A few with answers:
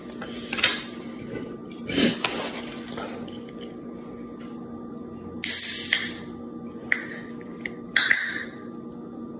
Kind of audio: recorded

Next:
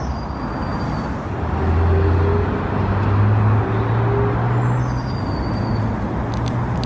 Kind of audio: recorded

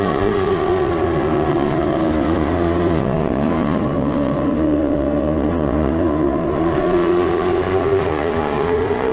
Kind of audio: remade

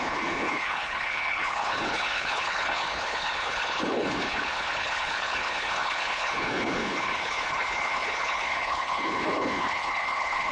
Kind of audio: remade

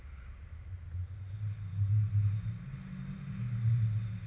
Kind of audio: recorded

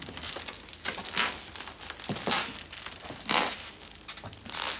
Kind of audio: recorded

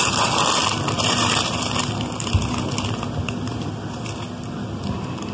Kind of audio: remade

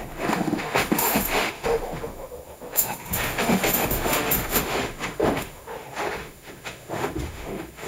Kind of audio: remade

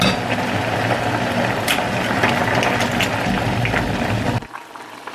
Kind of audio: recorded